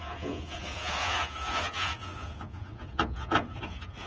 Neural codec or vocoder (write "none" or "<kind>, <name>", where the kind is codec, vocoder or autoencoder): vocoder, Vocos